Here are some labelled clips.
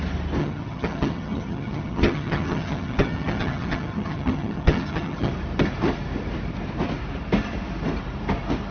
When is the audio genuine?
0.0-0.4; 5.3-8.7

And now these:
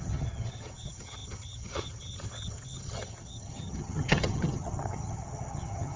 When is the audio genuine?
none

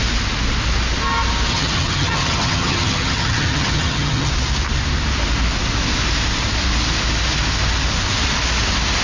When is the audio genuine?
0.0-1.5; 4.3-9.0